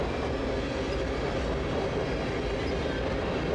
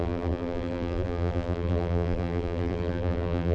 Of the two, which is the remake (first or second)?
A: second